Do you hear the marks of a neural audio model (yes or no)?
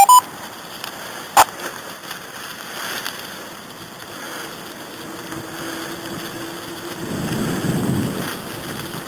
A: no